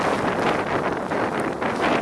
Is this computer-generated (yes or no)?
no